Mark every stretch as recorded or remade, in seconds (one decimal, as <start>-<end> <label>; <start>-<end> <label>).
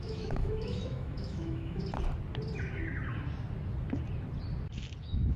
0.0-1.8 remade; 1.8-5.0 recorded; 5.0-5.4 remade